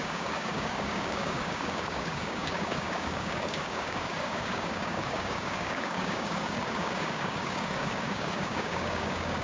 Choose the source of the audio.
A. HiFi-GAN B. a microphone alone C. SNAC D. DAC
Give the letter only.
D